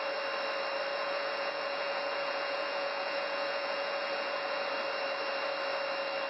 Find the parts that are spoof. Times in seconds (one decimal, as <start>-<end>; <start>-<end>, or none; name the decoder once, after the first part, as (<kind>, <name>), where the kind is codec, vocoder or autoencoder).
0.9-4.7 (vocoder, Vocos)